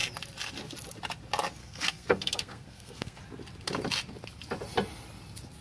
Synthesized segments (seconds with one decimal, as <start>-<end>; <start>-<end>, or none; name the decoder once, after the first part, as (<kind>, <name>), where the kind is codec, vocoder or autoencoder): 1.6-3.2 (codec, SNAC)